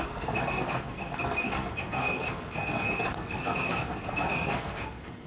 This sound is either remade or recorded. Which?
remade